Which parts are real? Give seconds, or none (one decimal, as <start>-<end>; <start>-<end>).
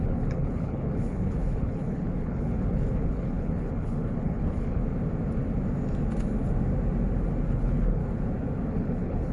4.8-7.5; 8.0-8.7